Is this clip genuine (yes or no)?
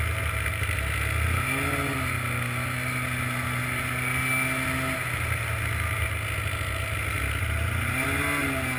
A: yes